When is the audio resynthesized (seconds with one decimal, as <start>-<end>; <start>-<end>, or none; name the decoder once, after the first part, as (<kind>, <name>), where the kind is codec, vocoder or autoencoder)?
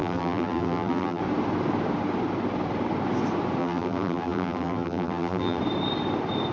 0.0-1.2 (vocoder, BigVGAN v2); 3.6-5.6